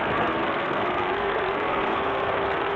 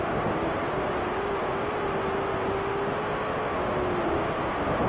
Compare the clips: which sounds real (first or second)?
second